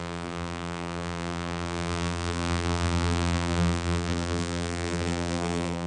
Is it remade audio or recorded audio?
remade